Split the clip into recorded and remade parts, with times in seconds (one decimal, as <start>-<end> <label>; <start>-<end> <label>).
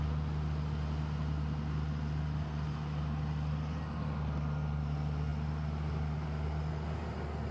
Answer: 0.0-7.5 recorded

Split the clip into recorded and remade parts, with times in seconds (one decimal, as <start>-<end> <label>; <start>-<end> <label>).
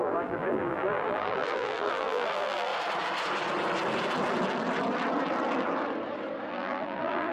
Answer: 0.0-2.7 remade; 2.7-6.5 recorded; 6.5-7.3 remade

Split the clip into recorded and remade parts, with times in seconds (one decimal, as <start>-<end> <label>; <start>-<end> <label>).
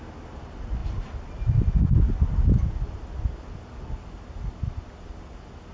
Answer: 0.0-5.7 recorded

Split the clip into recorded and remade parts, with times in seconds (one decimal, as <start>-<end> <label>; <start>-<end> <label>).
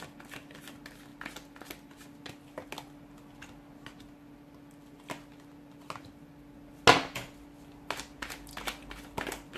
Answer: 0.0-9.6 recorded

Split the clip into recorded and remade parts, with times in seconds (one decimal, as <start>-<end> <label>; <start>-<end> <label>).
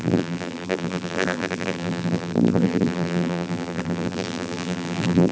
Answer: 0.0-5.3 remade